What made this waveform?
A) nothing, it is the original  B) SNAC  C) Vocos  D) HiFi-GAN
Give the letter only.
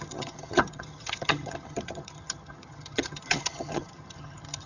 D